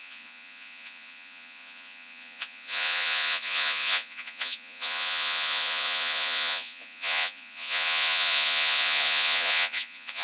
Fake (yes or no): yes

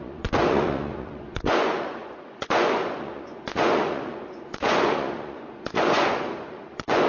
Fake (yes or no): yes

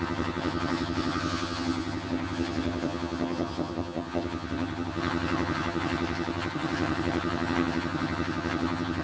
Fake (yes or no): yes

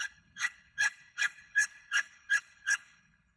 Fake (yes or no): yes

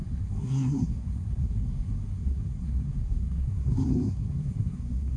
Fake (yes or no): yes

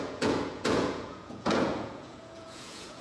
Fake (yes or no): yes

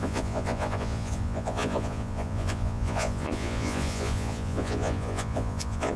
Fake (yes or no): yes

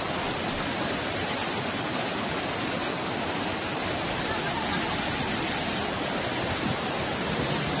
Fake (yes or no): no